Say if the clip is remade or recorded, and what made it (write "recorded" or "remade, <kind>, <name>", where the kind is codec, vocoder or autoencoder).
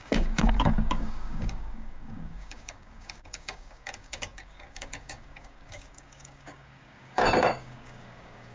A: remade, codec, DAC